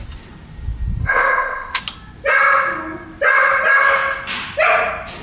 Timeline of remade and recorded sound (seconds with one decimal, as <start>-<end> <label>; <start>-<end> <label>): 0.0-1.0 recorded; 1.0-1.8 remade; 1.8-5.2 recorded